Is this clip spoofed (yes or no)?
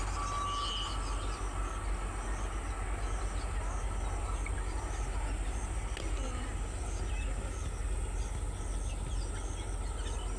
no